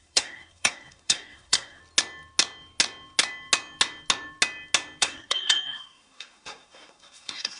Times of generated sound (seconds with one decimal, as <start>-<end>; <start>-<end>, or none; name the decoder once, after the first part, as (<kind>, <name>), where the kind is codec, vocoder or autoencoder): 0.0-1.8 (codec, SNAC); 5.0-7.6